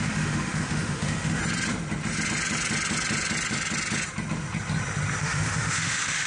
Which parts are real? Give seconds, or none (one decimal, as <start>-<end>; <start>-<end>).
1.4-5.2